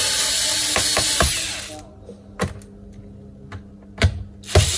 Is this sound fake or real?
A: real